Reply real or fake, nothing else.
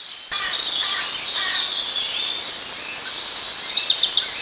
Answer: real